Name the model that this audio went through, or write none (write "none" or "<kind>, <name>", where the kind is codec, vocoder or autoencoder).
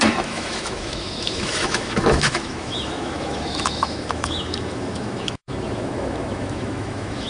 autoencoder, DAC-VAE